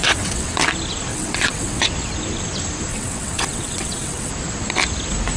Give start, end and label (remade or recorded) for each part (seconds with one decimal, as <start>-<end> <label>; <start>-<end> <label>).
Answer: 0.0-0.6 remade; 0.6-1.1 recorded; 1.1-1.8 remade; 1.8-2.9 recorded; 2.9-4.3 remade; 4.3-5.4 recorded

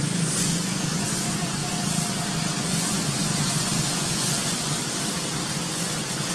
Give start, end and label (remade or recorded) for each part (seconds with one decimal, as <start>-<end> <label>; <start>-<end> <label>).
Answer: 0.0-1.6 remade; 1.6-2.6 recorded; 2.6-4.8 remade; 4.8-5.5 recorded; 5.5-6.3 remade